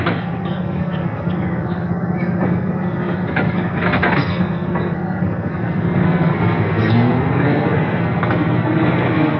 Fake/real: fake